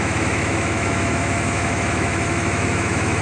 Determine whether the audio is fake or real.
fake